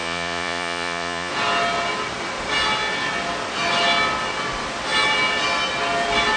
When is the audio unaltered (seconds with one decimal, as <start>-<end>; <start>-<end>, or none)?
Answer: 1.3-6.4